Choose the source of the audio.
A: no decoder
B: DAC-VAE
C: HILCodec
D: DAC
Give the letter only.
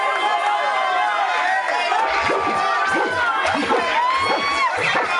A